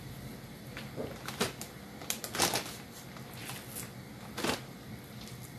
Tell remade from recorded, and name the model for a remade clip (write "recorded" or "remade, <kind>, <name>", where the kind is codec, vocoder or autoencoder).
recorded